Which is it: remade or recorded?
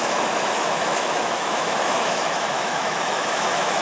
remade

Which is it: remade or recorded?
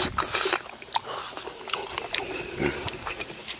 recorded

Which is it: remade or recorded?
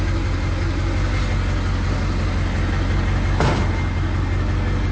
recorded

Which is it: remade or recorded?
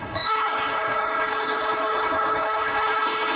remade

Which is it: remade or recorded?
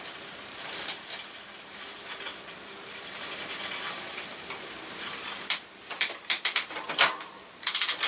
remade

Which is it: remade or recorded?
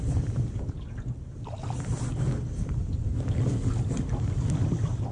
recorded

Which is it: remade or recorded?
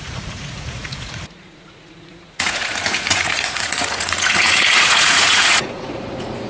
remade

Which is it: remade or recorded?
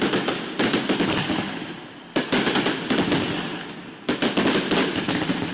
recorded